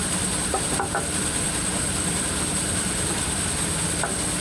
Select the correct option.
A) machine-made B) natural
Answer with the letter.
B